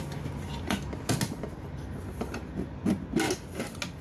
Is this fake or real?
real